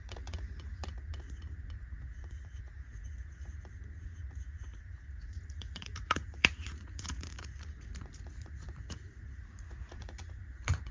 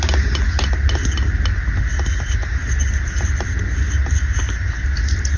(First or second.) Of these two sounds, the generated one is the first